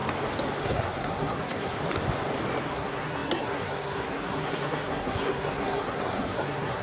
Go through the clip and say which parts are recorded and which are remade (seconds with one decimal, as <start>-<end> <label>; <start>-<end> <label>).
0.0-0.6 recorded; 0.6-1.8 remade; 1.8-2.6 recorded; 2.6-6.8 remade